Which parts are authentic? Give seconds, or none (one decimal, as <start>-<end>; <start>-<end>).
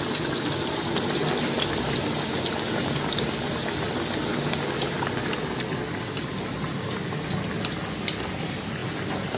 0.0-9.4